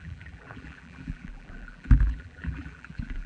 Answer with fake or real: fake